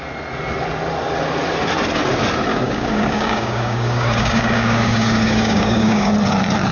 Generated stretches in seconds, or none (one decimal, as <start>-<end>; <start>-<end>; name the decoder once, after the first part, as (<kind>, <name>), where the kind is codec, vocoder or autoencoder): 2.5-6.1 (codec, DAC)